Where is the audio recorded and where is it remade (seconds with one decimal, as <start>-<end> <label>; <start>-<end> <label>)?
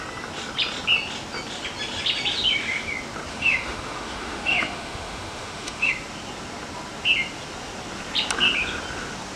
0.0-3.3 recorded; 3.3-5.9 remade; 5.9-9.4 recorded